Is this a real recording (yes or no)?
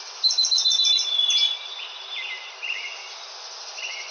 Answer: yes